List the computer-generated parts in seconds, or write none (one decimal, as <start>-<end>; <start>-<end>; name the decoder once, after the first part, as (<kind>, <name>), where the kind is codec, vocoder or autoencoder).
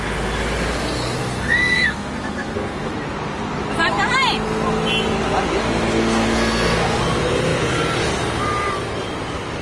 1.2-2.9 (codec, SNAC); 5.6-7.0